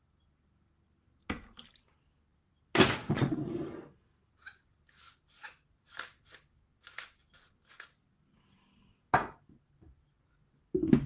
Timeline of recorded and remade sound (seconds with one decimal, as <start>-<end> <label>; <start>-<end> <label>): 0.0-3.0 recorded; 3.0-3.6 remade; 3.6-11.1 recorded